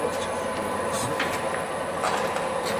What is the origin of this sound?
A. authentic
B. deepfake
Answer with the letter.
A